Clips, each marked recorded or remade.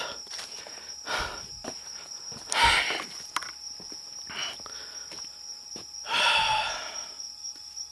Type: recorded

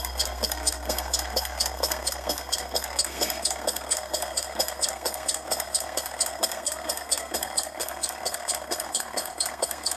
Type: remade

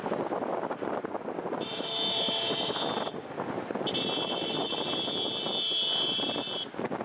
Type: recorded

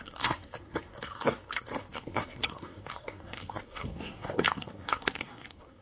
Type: remade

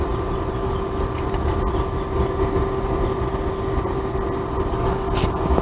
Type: recorded